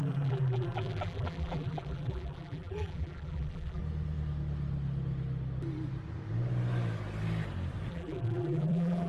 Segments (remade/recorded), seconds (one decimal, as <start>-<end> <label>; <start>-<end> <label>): 0.0-3.8 remade; 3.8-7.9 recorded; 7.9-9.1 remade